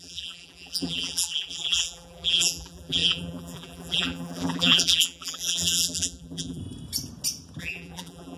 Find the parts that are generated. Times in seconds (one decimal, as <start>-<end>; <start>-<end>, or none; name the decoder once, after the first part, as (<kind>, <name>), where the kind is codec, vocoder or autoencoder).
0.0-6.6 (vocoder, BigVGAN v2); 7.6-8.4